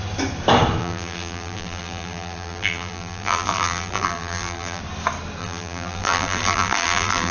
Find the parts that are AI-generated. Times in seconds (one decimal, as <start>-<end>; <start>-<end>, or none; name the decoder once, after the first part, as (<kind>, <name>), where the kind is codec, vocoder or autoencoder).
0.8-4.8 (vocoder, BigVGAN v2); 5.4-7.3